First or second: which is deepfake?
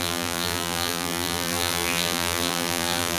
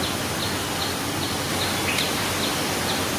first